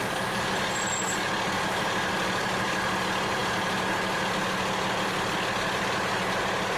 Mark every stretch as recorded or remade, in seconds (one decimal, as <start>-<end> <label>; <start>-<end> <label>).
0.0-6.8 recorded